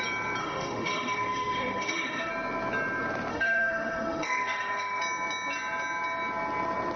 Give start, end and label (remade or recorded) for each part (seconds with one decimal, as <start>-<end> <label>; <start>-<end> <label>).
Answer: 0.0-0.4 recorded; 0.4-2.3 remade; 2.3-3.3 recorded; 3.3-5.0 remade; 5.0-7.0 recorded